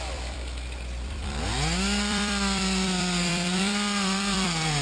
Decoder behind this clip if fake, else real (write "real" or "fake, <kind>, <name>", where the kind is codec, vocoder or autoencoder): fake, vocoder, BigVGAN v2